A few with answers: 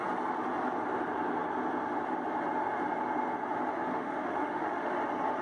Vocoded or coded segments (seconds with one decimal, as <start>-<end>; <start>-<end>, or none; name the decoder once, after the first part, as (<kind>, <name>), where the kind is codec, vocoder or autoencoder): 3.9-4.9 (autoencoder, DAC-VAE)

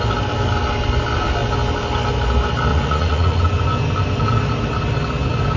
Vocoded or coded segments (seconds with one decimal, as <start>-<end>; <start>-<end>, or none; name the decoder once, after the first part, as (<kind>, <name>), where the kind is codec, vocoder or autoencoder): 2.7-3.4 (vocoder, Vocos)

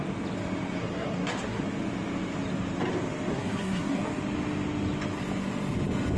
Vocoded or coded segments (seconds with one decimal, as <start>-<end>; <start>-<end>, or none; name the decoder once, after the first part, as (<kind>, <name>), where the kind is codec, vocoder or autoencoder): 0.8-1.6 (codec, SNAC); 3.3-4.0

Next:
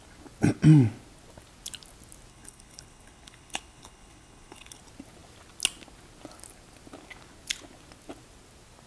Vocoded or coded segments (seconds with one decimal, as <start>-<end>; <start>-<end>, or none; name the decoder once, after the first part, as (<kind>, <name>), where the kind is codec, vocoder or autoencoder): 2.3-4.8 (codec, HILCodec)

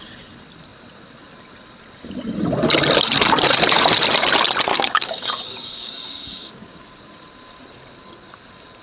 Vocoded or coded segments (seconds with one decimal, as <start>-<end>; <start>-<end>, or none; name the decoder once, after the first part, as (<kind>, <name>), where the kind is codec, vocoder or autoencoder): 4.7-6.9 (codec, DAC)

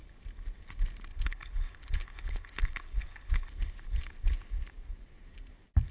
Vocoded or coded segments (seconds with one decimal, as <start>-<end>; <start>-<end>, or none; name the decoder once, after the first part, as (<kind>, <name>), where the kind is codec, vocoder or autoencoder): 1.1-3.5 (codec, HILCodec)